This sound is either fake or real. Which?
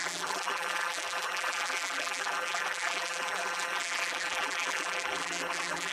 fake